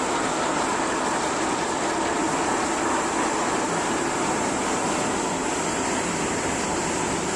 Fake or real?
real